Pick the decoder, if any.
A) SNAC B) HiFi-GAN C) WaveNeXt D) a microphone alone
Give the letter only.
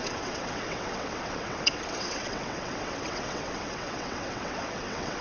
C